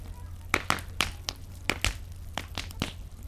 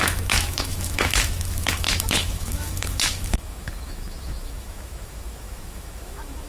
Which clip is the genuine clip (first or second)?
first